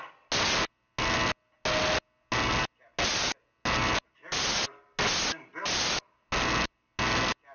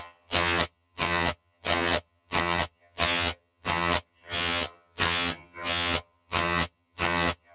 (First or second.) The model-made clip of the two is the second